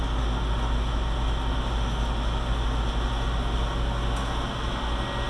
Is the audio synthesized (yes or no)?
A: no